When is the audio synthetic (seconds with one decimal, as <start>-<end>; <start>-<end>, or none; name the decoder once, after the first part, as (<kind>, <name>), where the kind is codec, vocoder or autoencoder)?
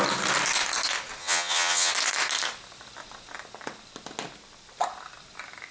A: 1.2-1.9 (vocoder, HiFi-GAN)